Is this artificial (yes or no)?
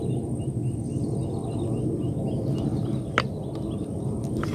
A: no